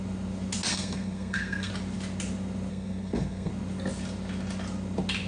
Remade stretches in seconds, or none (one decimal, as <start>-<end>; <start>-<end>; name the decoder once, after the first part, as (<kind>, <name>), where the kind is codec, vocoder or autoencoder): 0.7-1.7 (codec, SNAC); 2.7-3.5